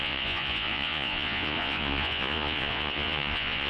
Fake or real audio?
fake